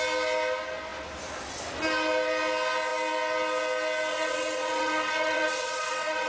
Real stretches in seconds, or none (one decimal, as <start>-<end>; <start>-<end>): 0.0-4.1